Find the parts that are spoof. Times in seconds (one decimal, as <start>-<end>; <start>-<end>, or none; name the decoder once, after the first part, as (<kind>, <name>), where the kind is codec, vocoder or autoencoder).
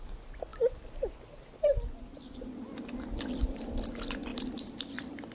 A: none